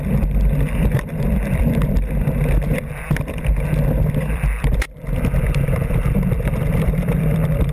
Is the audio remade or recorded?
remade